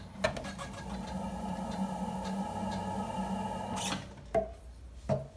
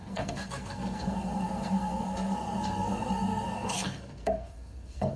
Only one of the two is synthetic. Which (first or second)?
second